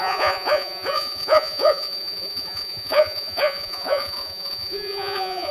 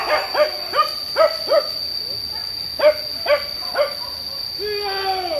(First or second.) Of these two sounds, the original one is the second